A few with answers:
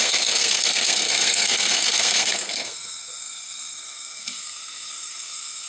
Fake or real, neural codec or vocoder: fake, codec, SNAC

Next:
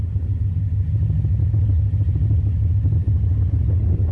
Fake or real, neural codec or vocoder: real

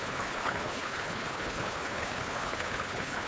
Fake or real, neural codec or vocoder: fake, codec, HILCodec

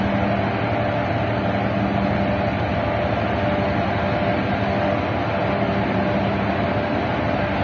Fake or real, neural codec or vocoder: real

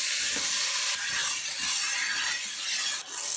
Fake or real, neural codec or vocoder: real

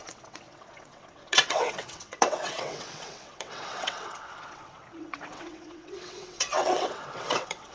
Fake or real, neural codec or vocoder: fake, vocoder, WaveNeXt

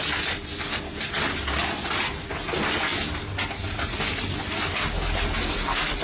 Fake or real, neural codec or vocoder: real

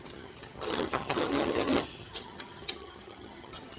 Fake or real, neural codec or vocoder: fake, vocoder, HiFi-GAN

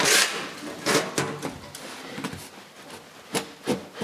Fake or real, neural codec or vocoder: real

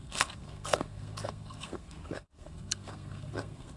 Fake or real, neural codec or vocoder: fake, codec, SNAC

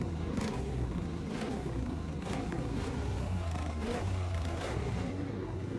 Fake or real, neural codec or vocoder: fake, codec, SNAC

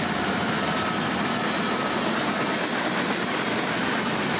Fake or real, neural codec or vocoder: real